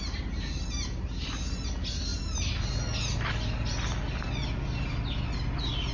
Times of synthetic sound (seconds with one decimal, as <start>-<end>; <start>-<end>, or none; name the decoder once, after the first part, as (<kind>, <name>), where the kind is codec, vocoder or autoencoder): none

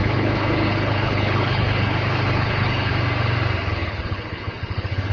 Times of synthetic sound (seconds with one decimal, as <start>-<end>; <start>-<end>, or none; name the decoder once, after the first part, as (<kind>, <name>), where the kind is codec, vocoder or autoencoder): 0.0-2.9 (codec, HILCodec); 3.6-5.1

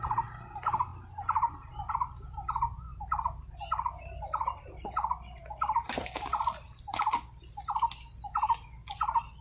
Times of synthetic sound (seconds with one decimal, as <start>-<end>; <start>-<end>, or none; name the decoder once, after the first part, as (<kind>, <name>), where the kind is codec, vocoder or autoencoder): none

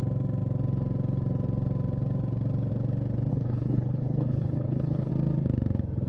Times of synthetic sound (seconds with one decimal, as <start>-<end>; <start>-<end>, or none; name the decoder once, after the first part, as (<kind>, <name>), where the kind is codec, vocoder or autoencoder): 3.3-5.1 (codec, HILCodec)

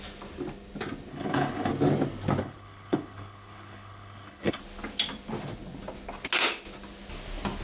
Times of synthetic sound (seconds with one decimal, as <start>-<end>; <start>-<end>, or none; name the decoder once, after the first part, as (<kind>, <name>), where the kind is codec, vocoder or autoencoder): 1.1-1.7 (codec, HILCodec); 2.4-4.6

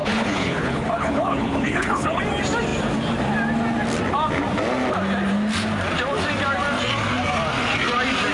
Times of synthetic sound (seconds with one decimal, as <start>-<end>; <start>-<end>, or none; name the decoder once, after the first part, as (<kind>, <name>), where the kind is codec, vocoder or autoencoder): 0.0-2.2 (codec, HILCodec)